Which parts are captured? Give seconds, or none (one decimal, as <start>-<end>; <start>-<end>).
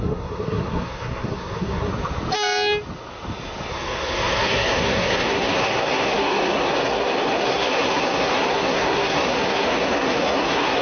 1.9-3.7